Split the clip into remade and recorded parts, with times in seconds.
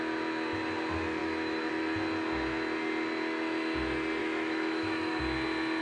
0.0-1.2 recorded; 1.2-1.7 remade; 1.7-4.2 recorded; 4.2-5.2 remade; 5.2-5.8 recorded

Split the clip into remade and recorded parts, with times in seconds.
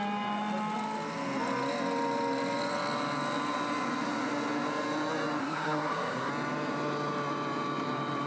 0.0-5.4 recorded; 5.4-6.3 remade; 6.3-8.3 recorded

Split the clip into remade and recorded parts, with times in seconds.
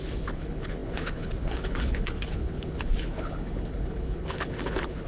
0.0-5.1 remade